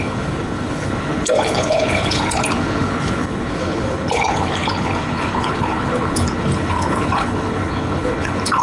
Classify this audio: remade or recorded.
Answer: remade